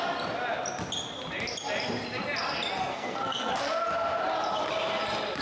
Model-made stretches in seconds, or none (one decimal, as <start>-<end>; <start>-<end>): 2.9-3.5